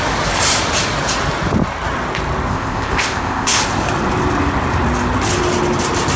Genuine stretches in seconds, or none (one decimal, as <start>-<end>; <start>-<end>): 0.0-2.5; 3.6-6.2